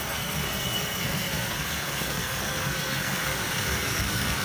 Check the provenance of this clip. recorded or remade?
remade